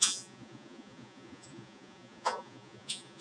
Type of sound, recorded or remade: remade